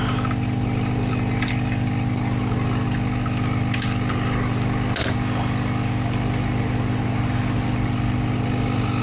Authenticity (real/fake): real